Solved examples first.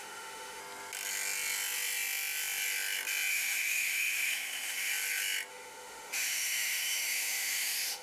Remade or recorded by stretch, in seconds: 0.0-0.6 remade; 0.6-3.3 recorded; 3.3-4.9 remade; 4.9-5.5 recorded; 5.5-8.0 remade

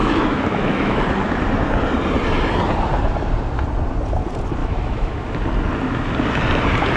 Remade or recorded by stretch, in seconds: 0.0-1.0 remade; 1.0-4.6 recorded; 4.6-5.3 remade; 5.3-7.0 recorded